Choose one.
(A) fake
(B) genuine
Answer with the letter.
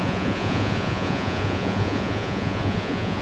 A